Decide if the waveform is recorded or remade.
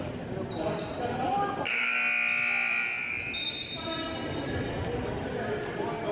recorded